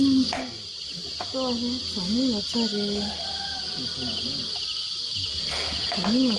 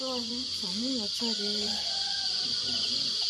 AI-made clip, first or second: second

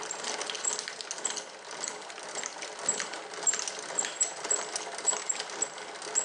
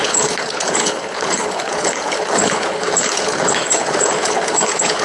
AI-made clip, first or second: second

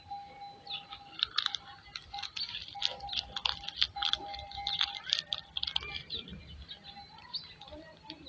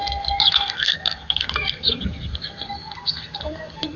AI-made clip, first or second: second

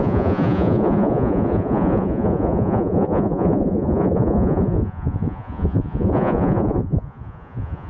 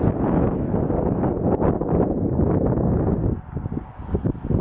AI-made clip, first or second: first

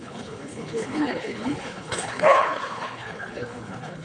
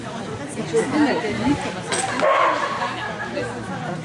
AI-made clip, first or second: first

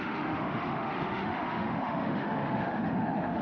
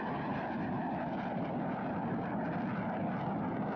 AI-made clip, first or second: first